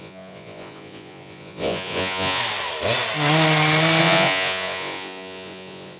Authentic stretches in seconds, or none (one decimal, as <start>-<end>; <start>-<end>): 2.4-4.0

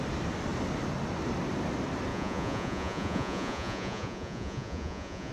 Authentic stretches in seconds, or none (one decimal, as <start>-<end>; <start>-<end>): 0.0-2.1

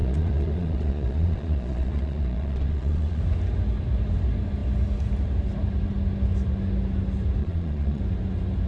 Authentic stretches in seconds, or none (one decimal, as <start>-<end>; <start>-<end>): 3.2-7.4; 8.0-8.7

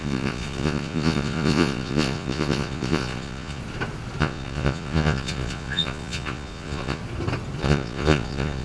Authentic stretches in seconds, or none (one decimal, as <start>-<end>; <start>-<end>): 3.6-4.2; 7.0-7.6

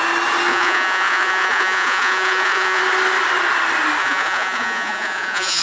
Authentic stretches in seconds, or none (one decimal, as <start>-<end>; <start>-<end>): 0.0-0.5; 2.8-4.0

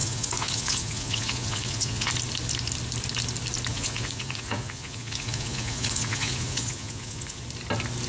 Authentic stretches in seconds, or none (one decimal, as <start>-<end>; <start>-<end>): 2.1-3.7; 7.4-8.1

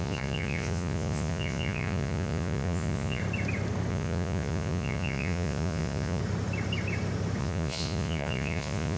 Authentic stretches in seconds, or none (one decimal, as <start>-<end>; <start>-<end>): 3.2-3.9; 6.2-7.4